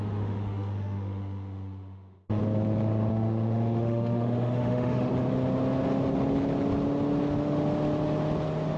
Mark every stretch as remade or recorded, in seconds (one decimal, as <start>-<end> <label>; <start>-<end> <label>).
0.0-2.4 remade; 2.4-3.1 recorded; 3.1-5.1 remade; 5.1-8.8 recorded